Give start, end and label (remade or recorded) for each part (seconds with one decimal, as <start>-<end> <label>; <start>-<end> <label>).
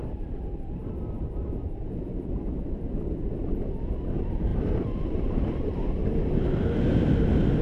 0.0-4.5 recorded; 4.5-5.3 remade; 5.3-7.6 recorded